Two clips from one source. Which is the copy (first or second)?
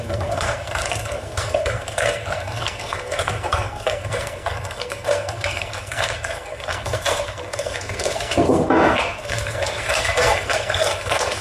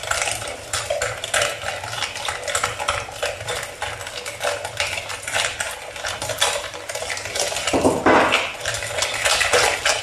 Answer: first